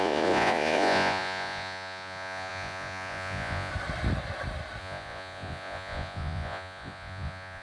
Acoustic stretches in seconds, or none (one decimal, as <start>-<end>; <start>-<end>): 3.7-4.8

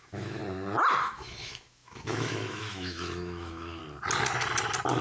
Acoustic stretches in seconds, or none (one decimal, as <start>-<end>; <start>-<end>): 0.4-1.0; 3.8-5.0

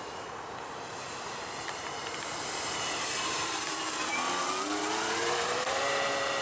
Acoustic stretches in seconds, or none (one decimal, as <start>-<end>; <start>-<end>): 4.1-4.8

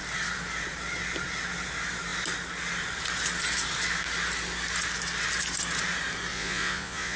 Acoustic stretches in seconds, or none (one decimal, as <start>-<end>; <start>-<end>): 0.0-6.3

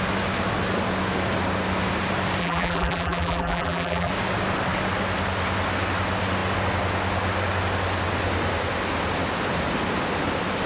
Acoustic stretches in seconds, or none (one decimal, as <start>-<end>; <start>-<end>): 0.0-2.4; 4.1-10.7

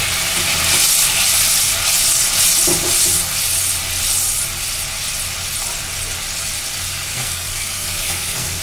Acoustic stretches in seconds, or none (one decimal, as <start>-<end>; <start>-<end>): 0.0-7.1